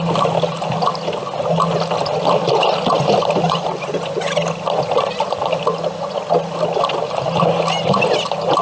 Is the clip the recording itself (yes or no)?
yes